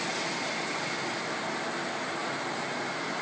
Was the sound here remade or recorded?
recorded